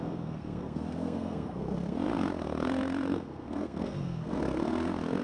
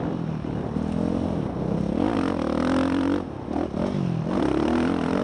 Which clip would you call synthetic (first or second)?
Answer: first